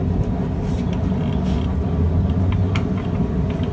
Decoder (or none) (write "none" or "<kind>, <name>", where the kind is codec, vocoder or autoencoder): none